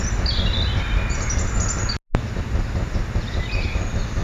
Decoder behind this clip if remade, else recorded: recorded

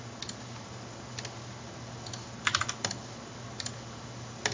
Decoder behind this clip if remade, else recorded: recorded